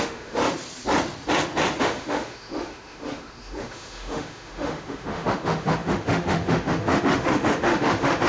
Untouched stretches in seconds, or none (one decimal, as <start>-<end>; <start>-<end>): 0.4-1.8